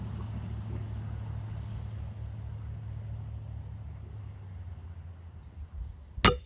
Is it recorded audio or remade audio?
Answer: recorded